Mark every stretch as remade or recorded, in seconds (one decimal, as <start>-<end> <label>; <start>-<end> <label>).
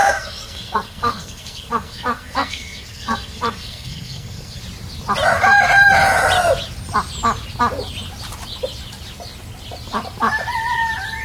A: 0.0-4.6 remade; 4.6-11.2 recorded